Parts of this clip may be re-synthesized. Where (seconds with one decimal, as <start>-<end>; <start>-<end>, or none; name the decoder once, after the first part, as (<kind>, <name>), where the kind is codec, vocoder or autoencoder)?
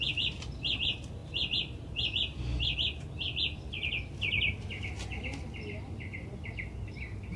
1.2-1.9 (vocoder, BigVGAN v2)